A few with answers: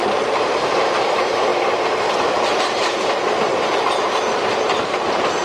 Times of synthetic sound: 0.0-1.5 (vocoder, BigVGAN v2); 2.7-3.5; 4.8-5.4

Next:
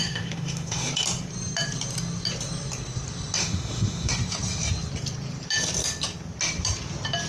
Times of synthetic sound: 0.0-0.9 (autoencoder, DAC-VAE); 3.4-4.1

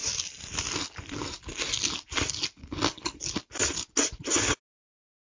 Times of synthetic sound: none

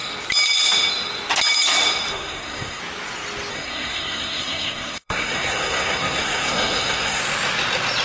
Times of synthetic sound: 2.1-2.8 (codec, SNAC); 3.5-7.2

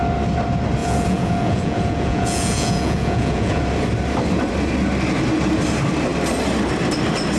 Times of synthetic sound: 0.8-3.6 (vocoder, Vocos)